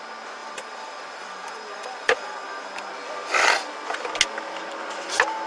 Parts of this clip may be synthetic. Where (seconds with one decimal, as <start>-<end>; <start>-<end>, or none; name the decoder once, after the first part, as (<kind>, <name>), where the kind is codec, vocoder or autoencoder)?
0.4-2.9 (vocoder, BigVGAN v2)